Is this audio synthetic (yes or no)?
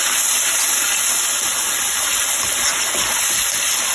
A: no